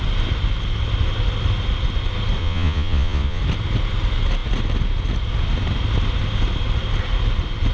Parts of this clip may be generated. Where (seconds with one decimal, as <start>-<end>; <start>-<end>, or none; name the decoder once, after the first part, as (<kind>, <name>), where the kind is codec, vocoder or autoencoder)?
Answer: 2.4-3.4 (vocoder, Vocos)